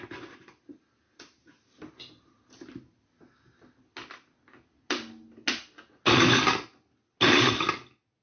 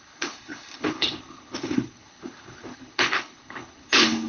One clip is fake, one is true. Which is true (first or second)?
first